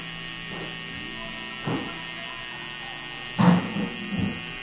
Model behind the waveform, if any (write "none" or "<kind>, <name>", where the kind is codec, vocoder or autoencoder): none